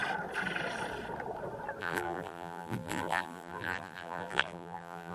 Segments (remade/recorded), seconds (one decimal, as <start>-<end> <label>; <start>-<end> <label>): 0.0-1.8 recorded; 1.8-5.1 remade